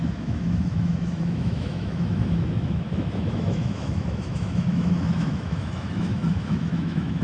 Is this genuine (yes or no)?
no